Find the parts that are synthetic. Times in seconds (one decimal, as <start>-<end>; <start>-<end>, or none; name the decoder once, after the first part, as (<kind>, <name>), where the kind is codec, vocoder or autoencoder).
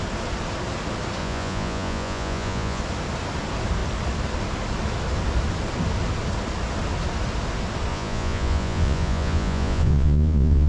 1.2-2.8 (vocoder, Vocos); 7.9-10.7